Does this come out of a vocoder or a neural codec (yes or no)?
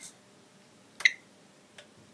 no